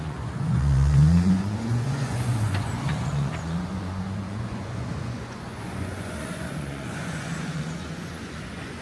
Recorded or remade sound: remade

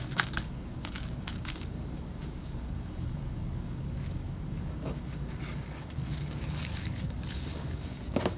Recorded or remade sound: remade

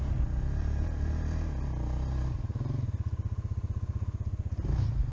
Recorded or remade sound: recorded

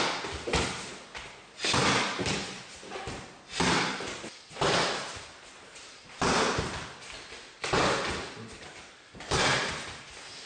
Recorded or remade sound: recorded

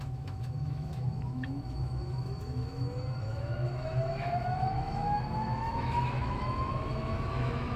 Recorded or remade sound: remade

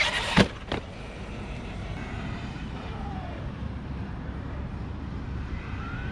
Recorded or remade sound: remade